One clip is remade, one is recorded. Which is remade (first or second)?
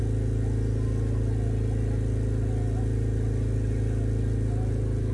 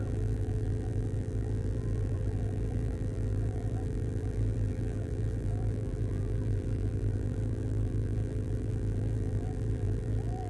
second